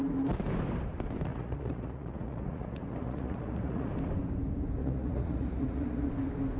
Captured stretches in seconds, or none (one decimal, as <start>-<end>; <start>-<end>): 0.0-1.3; 3.9-4.8; 6.1-6.6